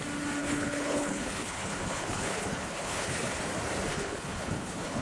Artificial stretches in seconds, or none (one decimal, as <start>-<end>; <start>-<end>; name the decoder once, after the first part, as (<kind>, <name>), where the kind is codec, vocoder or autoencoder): 0.4-3.4 (codec, HILCodec); 3.9-5.0